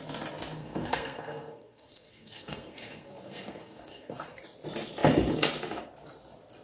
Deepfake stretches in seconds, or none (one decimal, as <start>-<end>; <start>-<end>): 0.6-4.4